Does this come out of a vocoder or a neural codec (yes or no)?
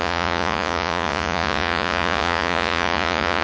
yes